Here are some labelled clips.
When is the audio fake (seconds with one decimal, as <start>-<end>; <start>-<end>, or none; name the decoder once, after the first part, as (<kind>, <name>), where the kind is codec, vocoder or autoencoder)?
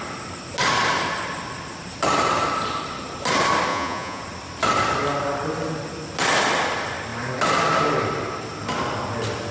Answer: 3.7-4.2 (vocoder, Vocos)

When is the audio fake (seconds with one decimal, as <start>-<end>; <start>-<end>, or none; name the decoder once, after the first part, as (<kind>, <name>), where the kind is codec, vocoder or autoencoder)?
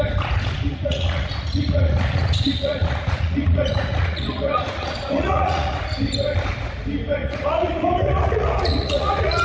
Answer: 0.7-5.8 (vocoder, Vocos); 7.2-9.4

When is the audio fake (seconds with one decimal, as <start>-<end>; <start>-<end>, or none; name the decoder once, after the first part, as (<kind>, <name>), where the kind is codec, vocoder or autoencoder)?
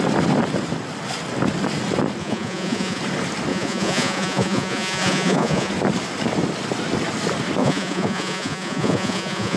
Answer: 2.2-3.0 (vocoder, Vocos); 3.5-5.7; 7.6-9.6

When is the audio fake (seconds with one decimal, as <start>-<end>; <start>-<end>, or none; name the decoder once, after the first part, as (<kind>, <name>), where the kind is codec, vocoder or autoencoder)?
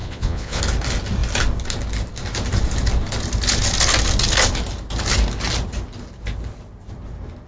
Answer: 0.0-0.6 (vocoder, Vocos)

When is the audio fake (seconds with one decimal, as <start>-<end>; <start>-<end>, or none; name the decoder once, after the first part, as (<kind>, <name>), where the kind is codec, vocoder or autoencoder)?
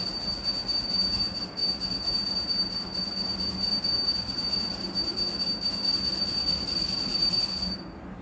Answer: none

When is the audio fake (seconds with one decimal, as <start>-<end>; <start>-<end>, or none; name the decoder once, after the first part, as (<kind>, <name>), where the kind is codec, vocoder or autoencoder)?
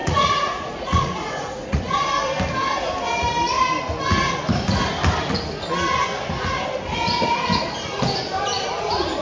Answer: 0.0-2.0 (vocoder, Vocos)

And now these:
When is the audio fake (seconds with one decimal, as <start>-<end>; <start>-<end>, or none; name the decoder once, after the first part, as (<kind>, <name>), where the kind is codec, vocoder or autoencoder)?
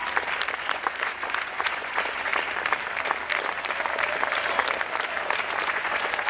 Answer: 0.6-2.3 (vocoder, Vocos); 5.6-6.3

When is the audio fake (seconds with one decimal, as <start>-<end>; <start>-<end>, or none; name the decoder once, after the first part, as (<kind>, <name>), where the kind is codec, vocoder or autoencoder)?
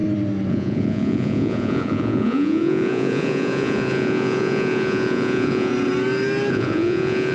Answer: 0.5-5.7 (vocoder, Vocos); 6.5-7.3